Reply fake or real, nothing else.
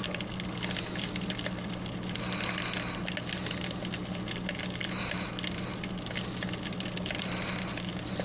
real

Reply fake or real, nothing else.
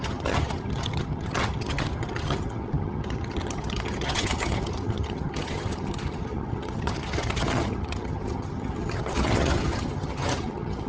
fake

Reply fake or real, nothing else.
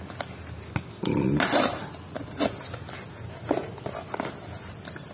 real